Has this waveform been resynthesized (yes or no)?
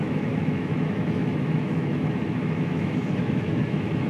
yes